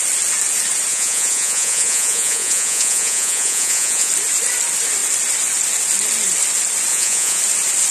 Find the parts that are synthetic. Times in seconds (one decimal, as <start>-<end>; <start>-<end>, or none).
0.9-4.1; 6.9-7.4